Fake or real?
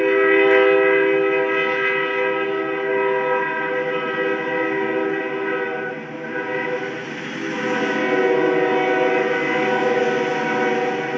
real